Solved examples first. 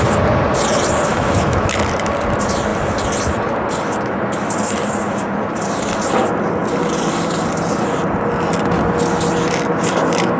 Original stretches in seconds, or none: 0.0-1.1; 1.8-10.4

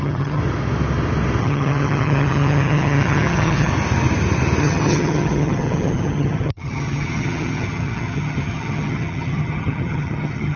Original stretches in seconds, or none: 0.4-1.4; 3.7-4.6

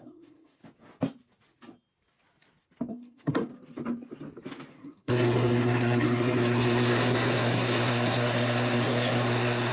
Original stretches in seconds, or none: 0.6-2.9; 3.5-4.7

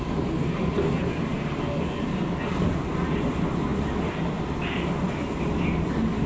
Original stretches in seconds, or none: 0.0-6.3

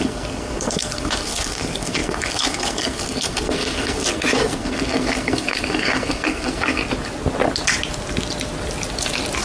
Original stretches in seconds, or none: 6.8-9.4

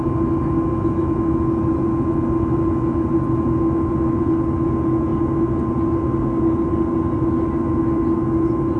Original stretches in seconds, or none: 0.0-8.8

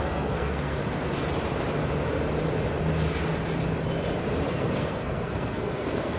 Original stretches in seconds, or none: 0.8-4.5

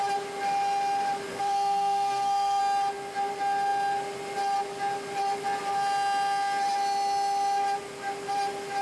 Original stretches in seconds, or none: 0.0-1.3; 2.6-8.8